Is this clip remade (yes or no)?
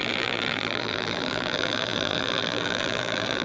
yes